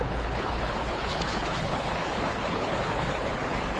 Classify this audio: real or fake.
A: fake